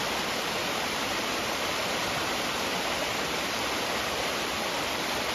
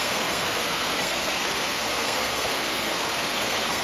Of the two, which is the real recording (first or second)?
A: first